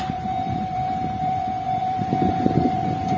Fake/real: fake